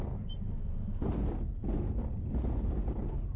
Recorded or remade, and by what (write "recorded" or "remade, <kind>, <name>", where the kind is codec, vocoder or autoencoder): recorded